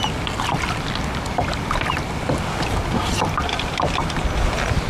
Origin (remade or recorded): recorded